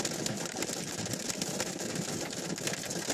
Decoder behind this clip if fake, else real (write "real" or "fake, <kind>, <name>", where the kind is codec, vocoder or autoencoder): real